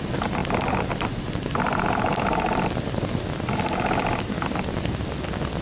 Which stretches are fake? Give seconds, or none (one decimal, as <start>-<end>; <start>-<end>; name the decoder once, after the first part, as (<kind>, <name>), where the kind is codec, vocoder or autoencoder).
none